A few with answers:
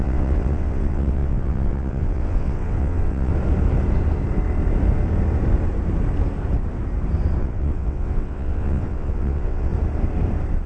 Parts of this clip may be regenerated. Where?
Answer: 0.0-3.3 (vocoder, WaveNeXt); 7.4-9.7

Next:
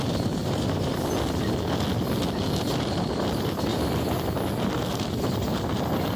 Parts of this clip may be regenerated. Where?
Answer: 0.4-0.9 (vocoder, BigVGAN v2)

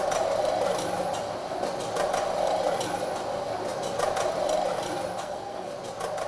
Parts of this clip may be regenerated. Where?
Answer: 5.2-5.7 (codec, SNAC)

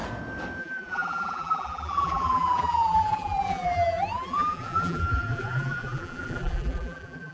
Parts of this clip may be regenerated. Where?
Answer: 0.6-7.3 (vocoder, BigVGAN v2)

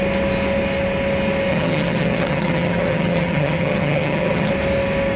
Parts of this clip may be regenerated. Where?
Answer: 1.5-4.5 (vocoder, HiFi-GAN)